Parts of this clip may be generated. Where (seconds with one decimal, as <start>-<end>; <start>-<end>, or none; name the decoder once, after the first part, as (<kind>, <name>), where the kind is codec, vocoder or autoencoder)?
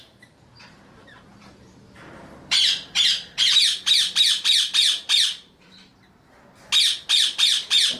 0.0-5.9 (vocoder, BigVGAN v2); 7.2-8.0